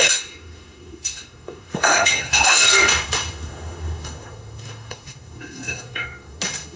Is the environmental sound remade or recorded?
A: remade